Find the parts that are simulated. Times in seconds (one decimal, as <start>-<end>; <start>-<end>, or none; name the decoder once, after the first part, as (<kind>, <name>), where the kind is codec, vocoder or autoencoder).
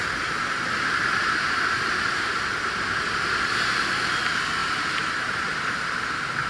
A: 1.2-2.3 (vocoder, BigVGAN v2); 4.6-5.8